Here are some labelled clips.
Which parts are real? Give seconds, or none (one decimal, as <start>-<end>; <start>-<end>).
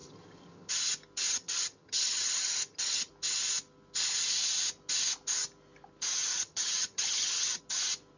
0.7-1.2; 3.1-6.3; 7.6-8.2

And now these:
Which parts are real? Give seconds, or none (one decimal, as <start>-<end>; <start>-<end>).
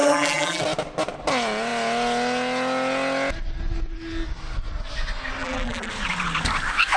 0.6-5.4; 5.9-7.0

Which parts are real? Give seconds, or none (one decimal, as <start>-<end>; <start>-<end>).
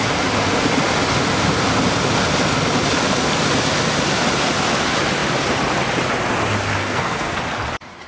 0.0-6.8; 7.4-8.1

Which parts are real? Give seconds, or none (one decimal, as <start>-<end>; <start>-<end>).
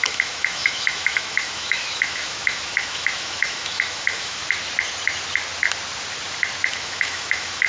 4.4-6.7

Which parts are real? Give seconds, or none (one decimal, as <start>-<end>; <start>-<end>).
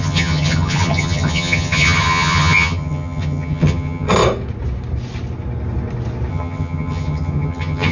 4.1-6.3